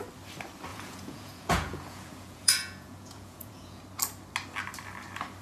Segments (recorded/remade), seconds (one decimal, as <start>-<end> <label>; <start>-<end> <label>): 0.0-0.7 recorded; 0.7-3.8 remade; 3.8-5.4 recorded